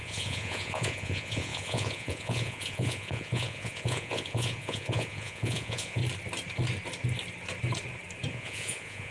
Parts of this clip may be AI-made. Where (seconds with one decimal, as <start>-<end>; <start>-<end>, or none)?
0.0-6.0; 8.3-9.1